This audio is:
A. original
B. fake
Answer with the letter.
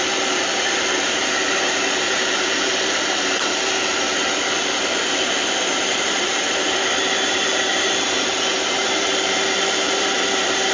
B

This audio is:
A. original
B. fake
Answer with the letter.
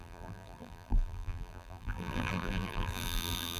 B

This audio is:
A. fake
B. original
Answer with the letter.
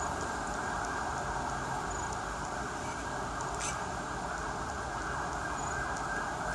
B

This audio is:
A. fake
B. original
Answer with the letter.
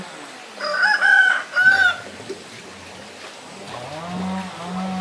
B